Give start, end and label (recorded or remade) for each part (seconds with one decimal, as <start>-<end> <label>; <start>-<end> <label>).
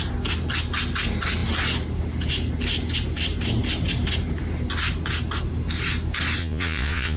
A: 0.0-6.4 recorded; 6.4-7.2 remade